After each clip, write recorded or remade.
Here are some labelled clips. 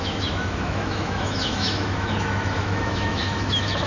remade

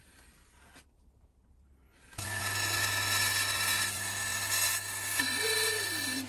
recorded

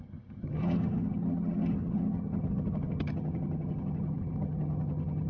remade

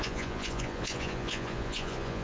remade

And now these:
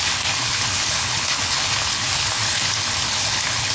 remade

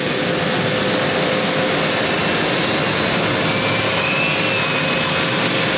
recorded